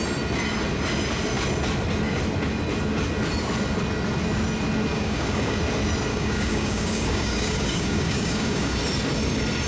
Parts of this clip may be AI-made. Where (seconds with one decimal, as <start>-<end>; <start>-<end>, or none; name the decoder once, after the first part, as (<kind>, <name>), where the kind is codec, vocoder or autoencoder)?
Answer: 4.9-5.6 (codec, DAC); 6.1-8.8